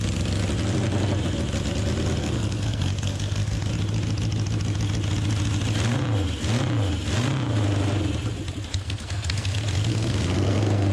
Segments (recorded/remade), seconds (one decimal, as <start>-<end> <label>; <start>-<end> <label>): 0.0-2.2 recorded; 2.2-3.7 remade; 3.7-8.7 recorded; 8.7-10.9 remade